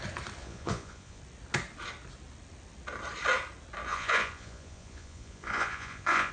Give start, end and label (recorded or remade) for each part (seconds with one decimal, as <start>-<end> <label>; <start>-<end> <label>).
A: 0.0-0.4 recorded; 0.4-1.2 remade; 1.2-3.9 recorded; 3.9-6.3 remade